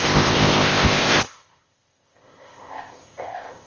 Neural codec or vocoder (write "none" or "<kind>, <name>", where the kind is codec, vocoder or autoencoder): codec, ZipCodec